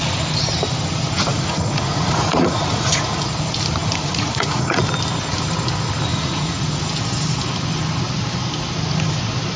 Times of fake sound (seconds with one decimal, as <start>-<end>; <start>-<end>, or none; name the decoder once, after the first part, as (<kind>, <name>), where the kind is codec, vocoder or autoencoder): 1.3-3.2 (vocoder, Vocos); 3.8-4.8; 6.1-6.8